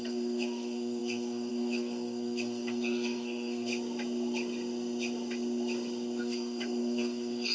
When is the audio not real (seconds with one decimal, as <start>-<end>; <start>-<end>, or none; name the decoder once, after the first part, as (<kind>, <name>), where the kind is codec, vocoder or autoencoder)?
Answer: 0.0-3.7 (codec, SNAC); 6.2-7.5

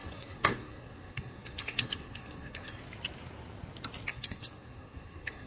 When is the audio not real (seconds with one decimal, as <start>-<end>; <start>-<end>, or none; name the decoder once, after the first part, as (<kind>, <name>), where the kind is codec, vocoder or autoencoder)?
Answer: 0.0-2.8 (codec, SNAC); 4.1-5.5

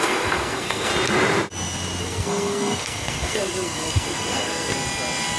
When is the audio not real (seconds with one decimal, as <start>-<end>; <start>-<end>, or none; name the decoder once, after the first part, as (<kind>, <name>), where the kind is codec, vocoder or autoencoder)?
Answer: 0.0-0.9 (codec, SNAC); 2.0-4.7

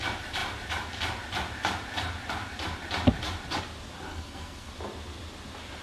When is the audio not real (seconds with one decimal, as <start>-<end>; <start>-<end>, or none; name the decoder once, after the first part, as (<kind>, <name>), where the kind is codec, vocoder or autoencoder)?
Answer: 4.1-4.7 (codec, SNAC)

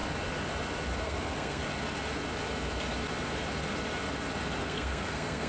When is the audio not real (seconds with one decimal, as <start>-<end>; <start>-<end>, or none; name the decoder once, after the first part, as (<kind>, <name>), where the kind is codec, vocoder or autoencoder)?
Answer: 1.0-1.6 (codec, SNAC); 4.6-5.5

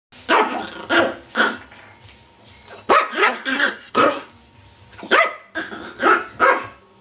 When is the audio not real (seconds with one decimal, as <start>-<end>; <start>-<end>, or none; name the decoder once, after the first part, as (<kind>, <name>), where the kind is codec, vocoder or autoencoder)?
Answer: 3.2-4.3 (codec, SNAC)

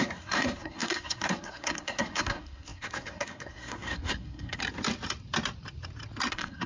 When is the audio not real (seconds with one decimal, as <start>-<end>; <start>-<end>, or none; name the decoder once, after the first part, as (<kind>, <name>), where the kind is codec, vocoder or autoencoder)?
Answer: 0.0-4.6 (codec, SNAC); 6.3-6.7